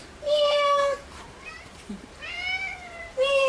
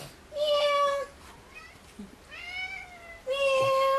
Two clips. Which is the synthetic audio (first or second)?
first